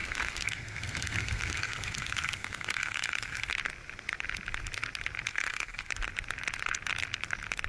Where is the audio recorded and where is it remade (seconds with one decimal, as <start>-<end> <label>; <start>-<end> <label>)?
0.0-3.5 remade; 3.5-5.3 recorded; 5.3-5.9 remade; 5.9-7.7 recorded